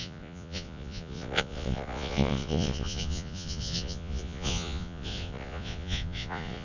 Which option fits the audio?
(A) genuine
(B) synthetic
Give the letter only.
B